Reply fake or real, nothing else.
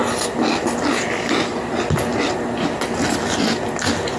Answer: real